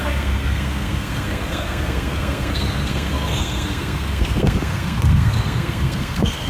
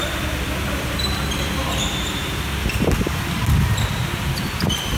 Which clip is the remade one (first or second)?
first